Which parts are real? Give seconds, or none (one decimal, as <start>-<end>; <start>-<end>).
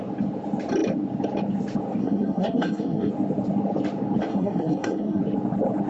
0.0-2.0; 3.1-4.3; 5.2-5.9